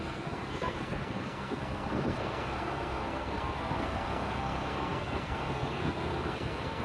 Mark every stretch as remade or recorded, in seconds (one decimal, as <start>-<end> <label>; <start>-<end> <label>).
0.0-6.8 remade